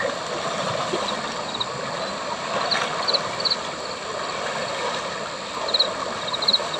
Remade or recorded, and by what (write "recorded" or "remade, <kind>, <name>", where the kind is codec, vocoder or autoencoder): recorded